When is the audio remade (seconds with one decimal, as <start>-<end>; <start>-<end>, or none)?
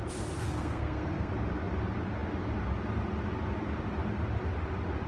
0.4-1.3